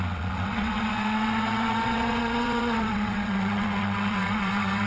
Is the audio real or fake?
fake